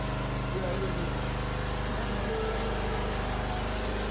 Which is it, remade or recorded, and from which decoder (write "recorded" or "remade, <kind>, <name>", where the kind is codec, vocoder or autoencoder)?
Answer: recorded